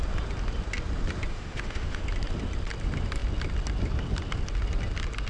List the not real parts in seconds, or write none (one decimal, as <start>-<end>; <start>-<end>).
1.3-2.0